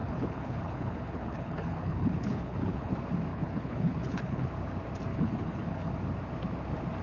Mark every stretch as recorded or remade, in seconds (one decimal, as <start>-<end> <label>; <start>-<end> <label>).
0.0-2.9 remade; 2.9-3.3 recorded; 3.3-4.5 remade; 4.5-5.1 recorded; 5.1-5.9 remade; 5.9-7.0 recorded